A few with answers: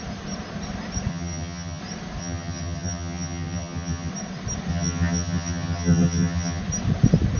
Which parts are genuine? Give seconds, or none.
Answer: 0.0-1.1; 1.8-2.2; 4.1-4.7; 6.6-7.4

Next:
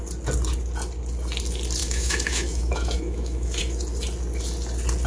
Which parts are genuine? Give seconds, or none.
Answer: 0.0-1.8; 3.6-5.1

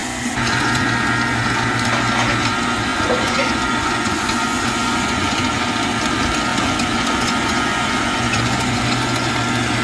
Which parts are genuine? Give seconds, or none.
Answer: 0.9-2.9; 5.5-6.5; 9.3-9.8

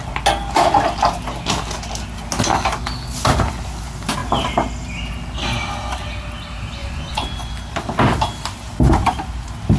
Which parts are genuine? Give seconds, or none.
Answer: 0.0-6.8; 7.5-9.8

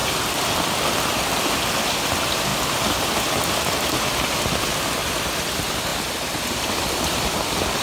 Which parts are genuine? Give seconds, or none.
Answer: 0.0-1.4; 2.5-3.0

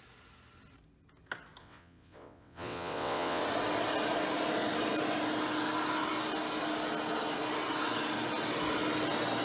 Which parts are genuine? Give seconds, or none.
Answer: 0.0-1.6; 3.4-9.4

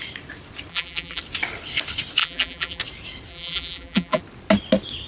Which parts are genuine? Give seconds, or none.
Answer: 0.0-0.7; 1.2-2.2; 2.8-3.3; 4.2-5.1

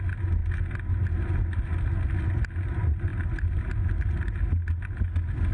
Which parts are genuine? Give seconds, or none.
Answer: 0.0-5.5